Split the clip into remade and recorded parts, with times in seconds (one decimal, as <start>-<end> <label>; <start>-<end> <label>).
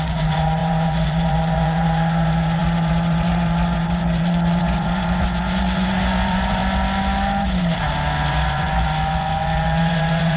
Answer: 0.0-6.6 remade; 6.6-8.3 recorded; 8.3-10.4 remade